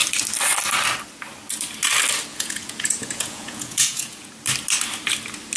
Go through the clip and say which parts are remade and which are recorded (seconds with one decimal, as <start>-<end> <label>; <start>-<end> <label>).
0.0-2.3 recorded; 2.3-4.3 remade; 4.3-5.6 recorded